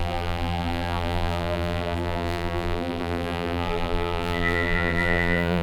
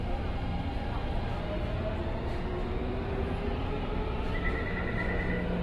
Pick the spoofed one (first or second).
first